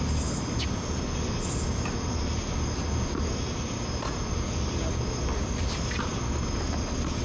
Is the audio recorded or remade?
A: recorded